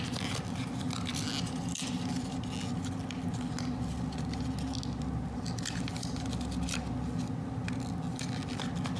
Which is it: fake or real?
real